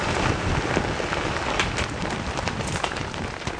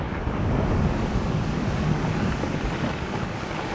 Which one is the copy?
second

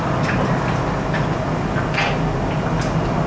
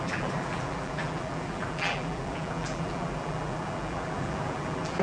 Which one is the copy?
second